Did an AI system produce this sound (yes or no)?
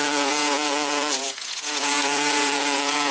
yes